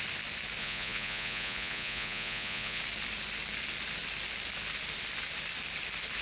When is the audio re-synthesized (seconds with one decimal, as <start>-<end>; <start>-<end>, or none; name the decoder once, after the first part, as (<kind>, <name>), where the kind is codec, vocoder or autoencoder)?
0.6-2.8 (vocoder, Vocos)

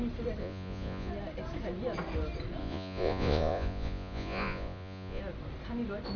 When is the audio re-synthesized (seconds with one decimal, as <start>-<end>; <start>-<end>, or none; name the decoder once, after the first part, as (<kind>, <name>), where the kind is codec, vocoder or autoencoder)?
0.4-1.1 (vocoder, Vocos); 2.6-5.2

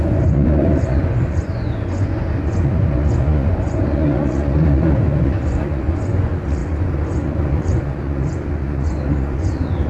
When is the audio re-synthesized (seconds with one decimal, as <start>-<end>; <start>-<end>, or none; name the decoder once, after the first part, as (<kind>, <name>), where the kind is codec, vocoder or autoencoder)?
0.0-9.9 (vocoder, Vocos)

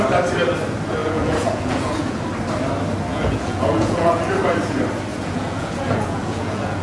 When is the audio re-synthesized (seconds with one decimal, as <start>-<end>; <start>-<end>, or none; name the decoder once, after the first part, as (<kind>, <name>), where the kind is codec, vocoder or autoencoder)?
1.0-2.2 (vocoder, Vocos); 3.1-4.2; 5.1-6.8